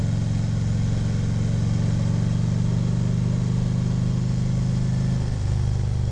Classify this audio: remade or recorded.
recorded